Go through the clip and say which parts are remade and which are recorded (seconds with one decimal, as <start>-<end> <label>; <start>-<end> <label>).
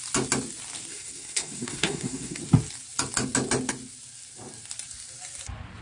0.0-0.9 recorded; 0.9-2.4 remade; 2.4-5.8 recorded